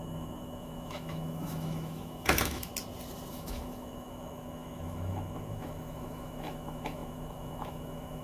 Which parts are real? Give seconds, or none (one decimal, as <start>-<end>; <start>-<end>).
2.7-3.3